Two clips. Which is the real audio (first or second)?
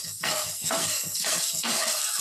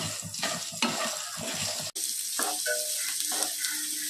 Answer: second